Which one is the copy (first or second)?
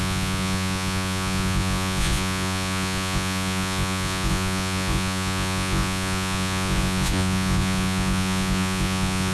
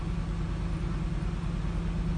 first